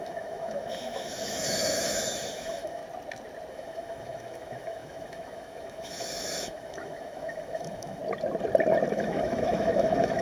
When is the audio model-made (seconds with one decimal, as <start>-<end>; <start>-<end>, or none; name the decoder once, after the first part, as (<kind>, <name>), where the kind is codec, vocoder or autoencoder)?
0.0-2.8 (autoencoder, DAC-VAE); 3.5-8.0; 8.9-10.2